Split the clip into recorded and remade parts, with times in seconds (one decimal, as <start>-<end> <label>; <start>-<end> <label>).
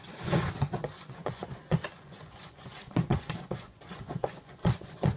0.0-5.2 remade